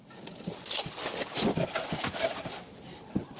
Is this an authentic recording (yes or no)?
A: yes